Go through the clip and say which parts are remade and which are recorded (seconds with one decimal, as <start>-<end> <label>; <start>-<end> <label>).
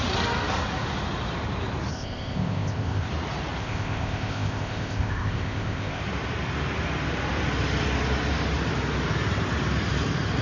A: 0.0-1.9 recorded; 1.9-3.1 remade; 3.1-3.6 recorded; 3.6-6.0 remade; 6.0-10.4 recorded